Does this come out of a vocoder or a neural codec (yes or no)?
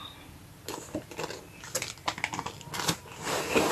no